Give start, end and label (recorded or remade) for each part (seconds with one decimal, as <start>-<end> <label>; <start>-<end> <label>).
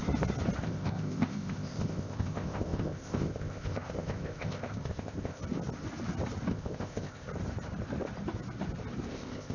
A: 0.0-0.6 recorded; 0.6-5.4 remade; 5.4-6.5 recorded; 6.5-7.3 remade; 7.3-9.1 recorded; 9.1-9.5 remade